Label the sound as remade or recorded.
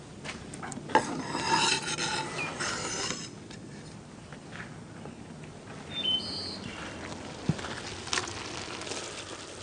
recorded